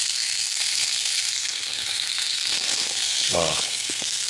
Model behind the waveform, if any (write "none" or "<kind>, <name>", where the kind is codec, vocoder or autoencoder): codec, SNAC